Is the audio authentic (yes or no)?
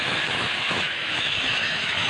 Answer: no